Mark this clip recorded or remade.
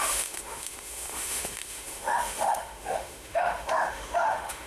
remade